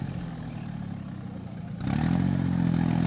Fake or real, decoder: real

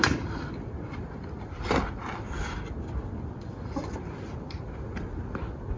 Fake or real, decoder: real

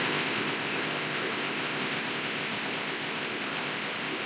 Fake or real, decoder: fake, codec, ZipCodec